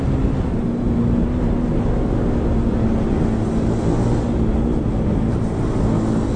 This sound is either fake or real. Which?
real